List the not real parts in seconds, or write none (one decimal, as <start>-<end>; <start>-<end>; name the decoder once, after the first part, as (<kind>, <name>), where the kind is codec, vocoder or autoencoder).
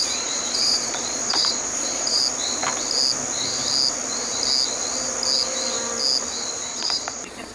0.0-2.2 (vocoder, Vocos); 6.7-7.5